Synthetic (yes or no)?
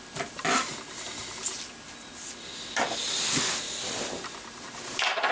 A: no